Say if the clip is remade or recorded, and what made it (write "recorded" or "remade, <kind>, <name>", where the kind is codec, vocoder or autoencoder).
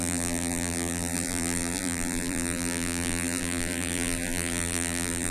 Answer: remade, vocoder, BigVGAN v2